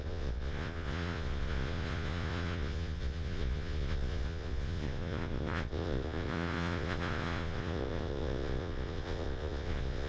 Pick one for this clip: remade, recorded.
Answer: remade